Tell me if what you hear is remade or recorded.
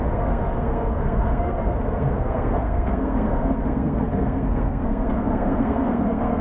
remade